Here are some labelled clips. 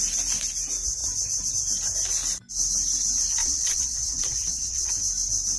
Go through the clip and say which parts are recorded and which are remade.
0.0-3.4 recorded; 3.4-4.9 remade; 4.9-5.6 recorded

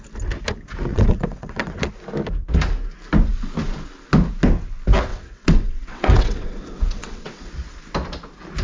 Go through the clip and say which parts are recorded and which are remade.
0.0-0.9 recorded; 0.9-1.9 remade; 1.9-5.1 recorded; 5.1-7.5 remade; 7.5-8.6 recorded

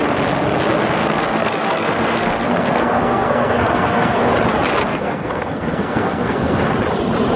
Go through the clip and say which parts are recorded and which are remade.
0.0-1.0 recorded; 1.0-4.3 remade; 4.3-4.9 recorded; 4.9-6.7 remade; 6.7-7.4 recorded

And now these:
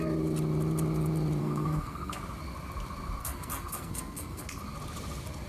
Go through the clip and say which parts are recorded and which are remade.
0.0-1.4 recorded; 1.4-2.2 remade; 2.2-3.2 recorded; 3.2-4.6 remade; 4.6-5.5 recorded

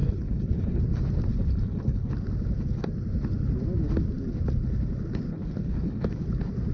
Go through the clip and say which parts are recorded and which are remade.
0.0-0.8 remade; 0.8-1.3 recorded; 1.3-2.1 remade; 2.1-5.3 recorded; 5.3-6.1 remade; 6.1-6.7 recorded

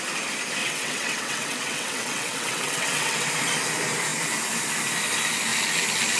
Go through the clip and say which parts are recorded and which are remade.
0.0-0.6 recorded; 0.6-3.3 remade; 3.3-6.2 recorded

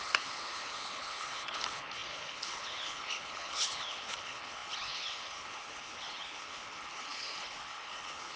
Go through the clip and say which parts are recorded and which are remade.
0.0-8.4 remade